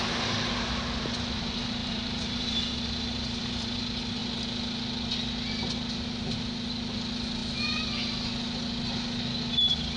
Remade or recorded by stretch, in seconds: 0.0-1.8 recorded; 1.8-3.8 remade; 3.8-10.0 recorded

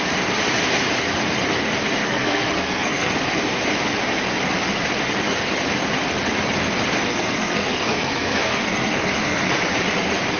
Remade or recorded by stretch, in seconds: 0.0-2.0 recorded; 2.0-3.1 remade; 3.1-7.1 recorded; 7.1-9.5 remade; 9.5-10.4 recorded

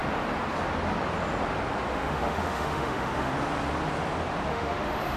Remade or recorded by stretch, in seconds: 0.0-1.9 recorded; 1.9-3.3 remade; 3.3-4.5 recorded; 4.5-5.2 remade